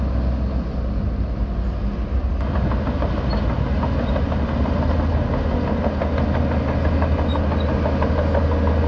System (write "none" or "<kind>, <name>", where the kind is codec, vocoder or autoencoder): none